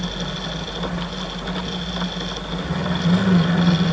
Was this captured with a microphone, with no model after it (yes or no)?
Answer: yes